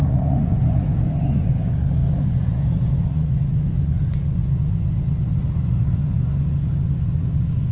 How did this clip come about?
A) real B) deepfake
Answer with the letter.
B